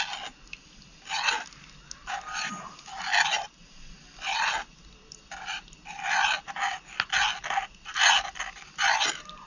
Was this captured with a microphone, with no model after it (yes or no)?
yes